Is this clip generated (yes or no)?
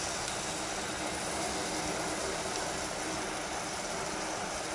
no